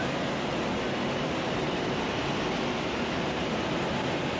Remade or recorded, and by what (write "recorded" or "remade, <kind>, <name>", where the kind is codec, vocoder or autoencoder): recorded